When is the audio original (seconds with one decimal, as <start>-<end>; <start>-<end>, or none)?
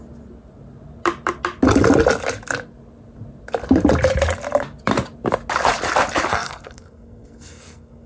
0.0-6.3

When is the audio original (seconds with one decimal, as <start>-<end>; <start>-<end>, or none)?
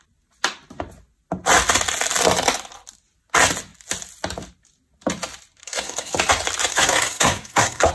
0.0-5.6; 6.1-6.7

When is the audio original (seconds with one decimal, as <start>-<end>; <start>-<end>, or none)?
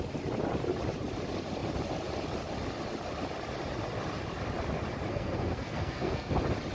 0.0-5.1; 6.3-6.7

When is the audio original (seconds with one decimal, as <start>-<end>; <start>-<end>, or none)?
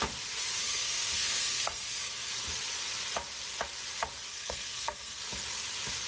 0.0-0.6; 2.3-4.3; 5.2-6.1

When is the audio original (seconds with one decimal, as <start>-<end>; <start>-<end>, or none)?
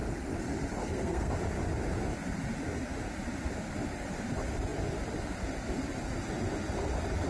0.0-0.8; 1.3-7.3